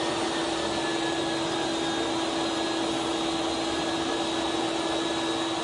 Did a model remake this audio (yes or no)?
no